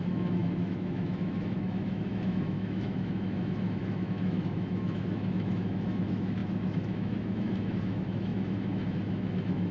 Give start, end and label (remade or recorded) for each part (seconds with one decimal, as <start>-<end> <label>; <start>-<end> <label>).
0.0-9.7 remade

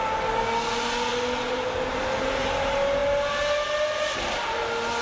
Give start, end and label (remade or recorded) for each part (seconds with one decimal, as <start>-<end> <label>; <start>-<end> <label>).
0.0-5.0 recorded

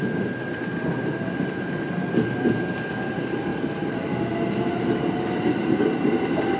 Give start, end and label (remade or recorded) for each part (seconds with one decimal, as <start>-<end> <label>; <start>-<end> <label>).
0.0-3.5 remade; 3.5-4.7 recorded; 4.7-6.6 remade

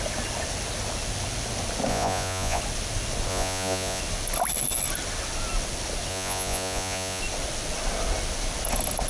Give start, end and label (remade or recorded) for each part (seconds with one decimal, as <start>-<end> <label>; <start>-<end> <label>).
0.0-1.9 recorded; 1.9-2.6 remade; 2.6-3.3 recorded; 3.3-4.0 remade; 4.0-6.1 recorded; 6.1-7.2 remade; 7.2-9.1 recorded

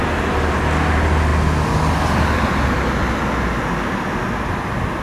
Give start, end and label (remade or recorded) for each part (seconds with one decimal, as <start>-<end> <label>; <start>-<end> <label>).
0.0-5.0 recorded